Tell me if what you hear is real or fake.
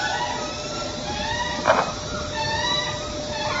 real